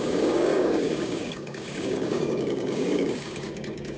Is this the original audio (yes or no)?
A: no